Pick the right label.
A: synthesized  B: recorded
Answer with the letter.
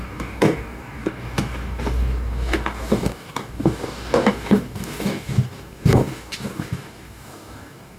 A